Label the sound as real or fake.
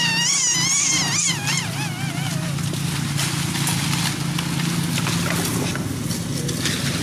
real